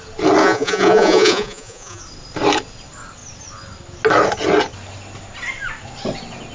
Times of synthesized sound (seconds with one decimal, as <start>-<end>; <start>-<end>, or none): 0.4-2.0